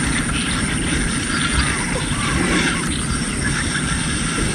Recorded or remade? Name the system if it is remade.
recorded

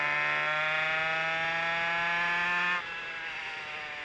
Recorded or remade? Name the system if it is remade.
recorded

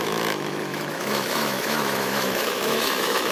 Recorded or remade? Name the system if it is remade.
remade, autoencoder, DAC-VAE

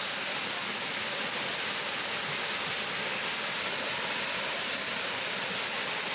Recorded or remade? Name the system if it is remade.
recorded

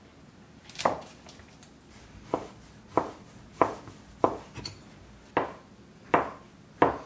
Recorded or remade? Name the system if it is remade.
recorded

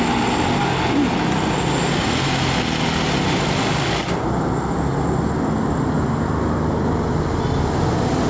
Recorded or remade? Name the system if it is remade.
recorded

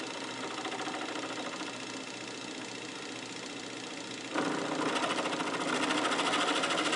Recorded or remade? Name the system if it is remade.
recorded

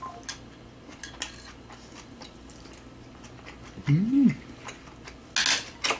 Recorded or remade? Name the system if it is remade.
recorded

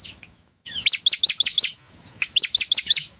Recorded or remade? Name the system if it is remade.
remade, autoencoder, DAC-VAE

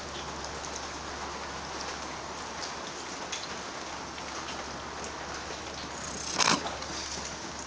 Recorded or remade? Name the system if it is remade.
recorded